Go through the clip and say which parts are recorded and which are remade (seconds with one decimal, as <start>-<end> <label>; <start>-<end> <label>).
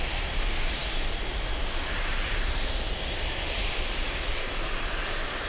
0.0-5.5 recorded